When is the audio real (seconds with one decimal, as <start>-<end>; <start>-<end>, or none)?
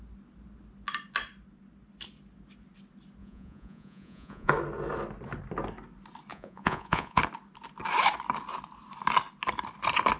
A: 0.0-3.2; 4.5-6.3; 7.2-10.2